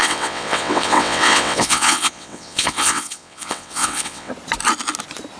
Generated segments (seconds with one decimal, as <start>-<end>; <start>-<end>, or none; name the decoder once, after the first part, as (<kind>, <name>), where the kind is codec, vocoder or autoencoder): 0.0-4.3 (vocoder, WaveNeXt)